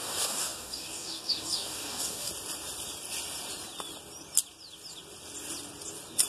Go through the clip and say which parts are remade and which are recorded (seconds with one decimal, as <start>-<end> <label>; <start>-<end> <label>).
0.0-2.3 remade; 2.3-6.3 recorded